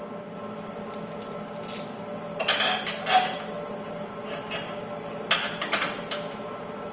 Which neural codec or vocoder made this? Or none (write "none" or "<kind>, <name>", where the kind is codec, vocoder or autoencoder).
none